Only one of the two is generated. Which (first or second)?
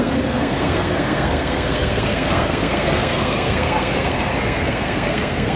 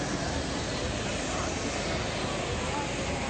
first